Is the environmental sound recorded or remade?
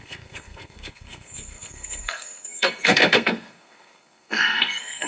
remade